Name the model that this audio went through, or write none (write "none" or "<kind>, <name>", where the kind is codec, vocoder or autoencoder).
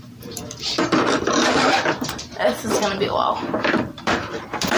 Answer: vocoder, BigVGAN v2